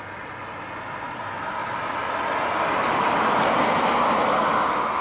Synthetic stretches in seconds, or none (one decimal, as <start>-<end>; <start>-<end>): none